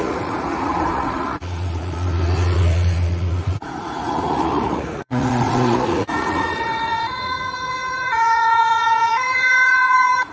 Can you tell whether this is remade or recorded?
remade